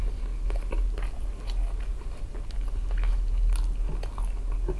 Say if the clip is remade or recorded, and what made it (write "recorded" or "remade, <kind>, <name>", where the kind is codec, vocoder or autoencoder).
recorded